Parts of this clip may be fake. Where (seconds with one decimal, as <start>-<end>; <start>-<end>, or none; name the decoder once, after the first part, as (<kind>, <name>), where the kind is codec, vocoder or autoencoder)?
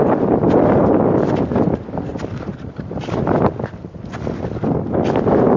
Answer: 2.1-2.7 (vocoder, BigVGAN v2)